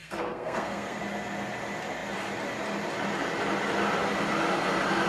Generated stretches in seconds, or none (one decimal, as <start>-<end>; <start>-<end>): 0.0-1.0